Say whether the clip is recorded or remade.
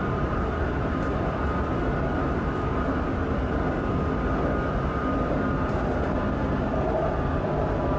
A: recorded